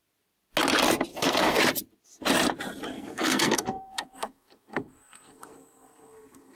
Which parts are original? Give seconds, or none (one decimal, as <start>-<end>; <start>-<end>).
0.0-1.1; 1.6-2.9